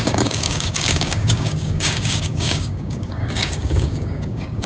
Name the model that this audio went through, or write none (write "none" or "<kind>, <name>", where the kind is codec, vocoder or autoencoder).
codec, DAC